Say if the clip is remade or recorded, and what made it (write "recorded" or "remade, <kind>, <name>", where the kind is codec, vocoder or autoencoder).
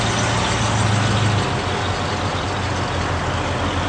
recorded